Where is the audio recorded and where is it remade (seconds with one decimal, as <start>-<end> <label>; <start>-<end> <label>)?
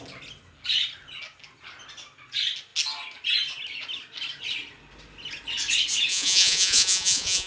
0.0-6.1 recorded; 6.1-7.5 remade